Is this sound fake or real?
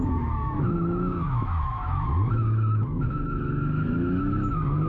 fake